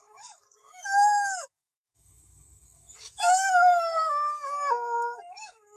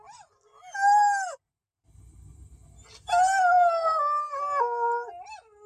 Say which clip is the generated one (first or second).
first